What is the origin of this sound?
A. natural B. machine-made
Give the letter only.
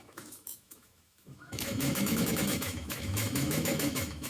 B